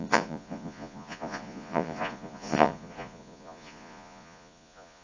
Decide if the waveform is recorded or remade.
remade